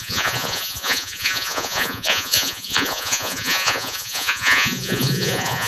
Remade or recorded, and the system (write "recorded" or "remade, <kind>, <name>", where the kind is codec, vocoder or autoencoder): remade, vocoder, Vocos